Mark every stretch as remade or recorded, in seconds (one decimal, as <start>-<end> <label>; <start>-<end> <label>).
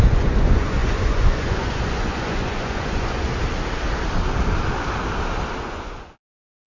0.0-3.3 remade; 3.3-5.6 recorded; 5.6-6.7 remade